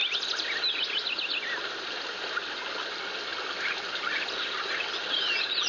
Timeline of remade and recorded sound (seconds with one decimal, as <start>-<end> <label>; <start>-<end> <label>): 0.0-5.7 recorded